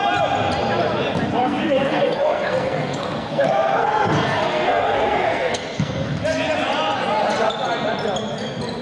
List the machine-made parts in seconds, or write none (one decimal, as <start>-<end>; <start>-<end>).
1.4-6.2